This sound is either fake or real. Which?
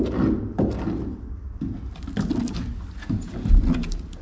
real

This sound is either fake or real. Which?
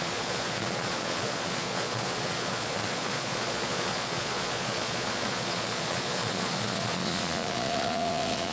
fake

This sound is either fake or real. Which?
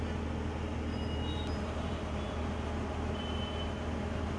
real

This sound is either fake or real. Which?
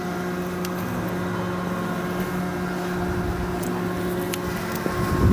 real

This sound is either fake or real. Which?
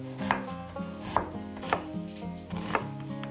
real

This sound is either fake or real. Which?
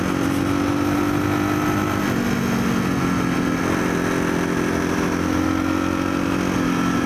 real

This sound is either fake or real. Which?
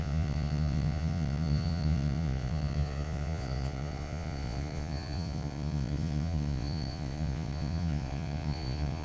fake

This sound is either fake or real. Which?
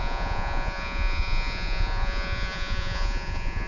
fake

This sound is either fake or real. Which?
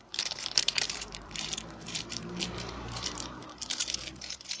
fake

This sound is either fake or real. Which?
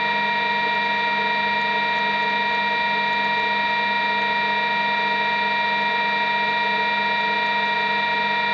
real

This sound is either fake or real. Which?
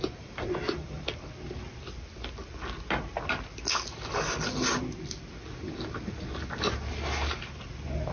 real